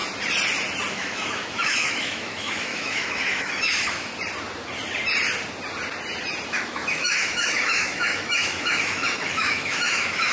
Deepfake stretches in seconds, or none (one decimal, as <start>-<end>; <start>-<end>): 0.9-4.1; 6.5-10.3